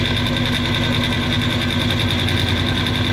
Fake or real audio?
real